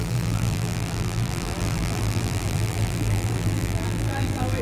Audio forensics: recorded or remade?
remade